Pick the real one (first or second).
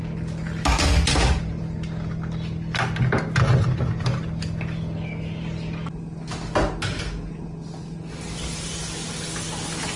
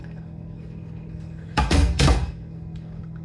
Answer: first